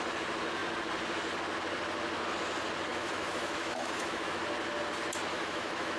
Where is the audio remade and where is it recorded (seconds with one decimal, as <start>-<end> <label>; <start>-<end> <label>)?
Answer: 0.0-2.9 recorded; 2.9-4.4 remade; 4.4-5.3 recorded; 5.3-6.0 remade